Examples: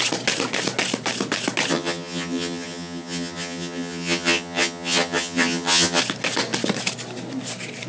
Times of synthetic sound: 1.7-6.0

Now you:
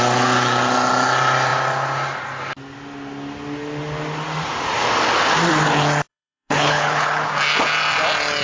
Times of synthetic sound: 6.1-7.3

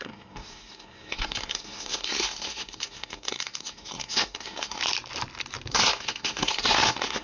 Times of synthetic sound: 0.0-4.8; 5.7-7.2

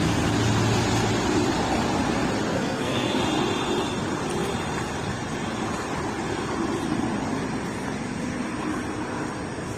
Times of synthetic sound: 2.5-3.2

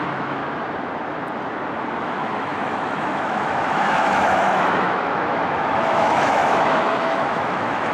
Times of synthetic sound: 0.0-0.4; 2.0-7.9

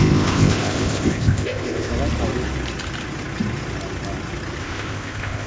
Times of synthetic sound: 0.0-1.9; 4.6-5.5

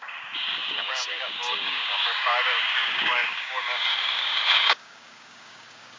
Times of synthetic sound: 0.0-6.0

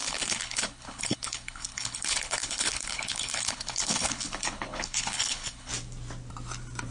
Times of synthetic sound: 0.0-5.7